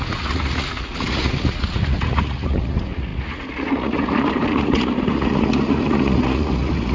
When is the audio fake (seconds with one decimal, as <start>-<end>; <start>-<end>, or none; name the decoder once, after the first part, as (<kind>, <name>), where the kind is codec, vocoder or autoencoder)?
0.0-6.9 (vocoder, Vocos)